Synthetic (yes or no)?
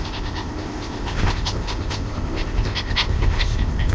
yes